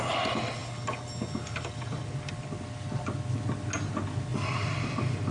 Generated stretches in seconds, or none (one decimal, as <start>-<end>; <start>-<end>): none